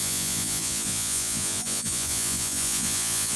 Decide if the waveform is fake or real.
fake